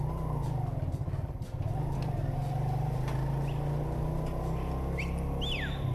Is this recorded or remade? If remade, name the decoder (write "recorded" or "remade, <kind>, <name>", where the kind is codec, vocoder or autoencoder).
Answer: recorded